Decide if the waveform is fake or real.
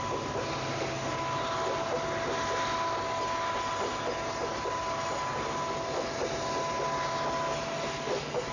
real